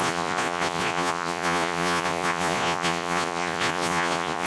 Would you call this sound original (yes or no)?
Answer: no